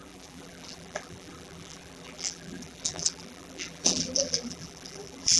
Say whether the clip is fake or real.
fake